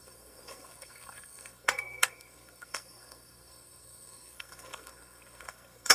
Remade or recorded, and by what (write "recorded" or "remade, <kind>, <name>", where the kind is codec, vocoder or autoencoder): remade, codec, SNAC